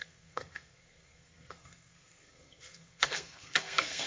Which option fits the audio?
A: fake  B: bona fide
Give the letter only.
A